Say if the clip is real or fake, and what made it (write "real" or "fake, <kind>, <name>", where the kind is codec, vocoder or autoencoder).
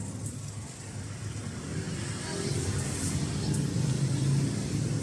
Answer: real